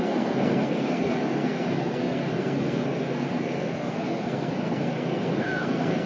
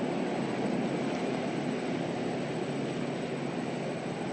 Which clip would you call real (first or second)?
second